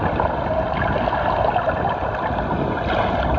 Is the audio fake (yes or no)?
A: no